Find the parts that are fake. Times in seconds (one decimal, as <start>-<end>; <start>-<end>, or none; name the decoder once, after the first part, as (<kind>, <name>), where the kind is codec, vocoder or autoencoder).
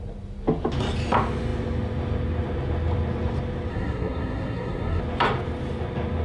3.7-5.0 (codec, SNAC)